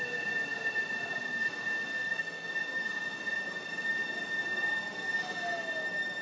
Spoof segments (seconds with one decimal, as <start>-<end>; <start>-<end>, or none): 1.9-2.5